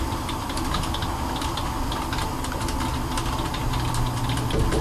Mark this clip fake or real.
real